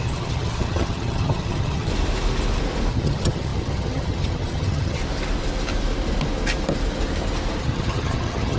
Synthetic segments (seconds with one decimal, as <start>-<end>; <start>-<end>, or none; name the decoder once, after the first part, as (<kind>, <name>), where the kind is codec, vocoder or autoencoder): 0.0-1.9 (vocoder, HiFi-GAN); 2.9-5.0; 7.6-8.6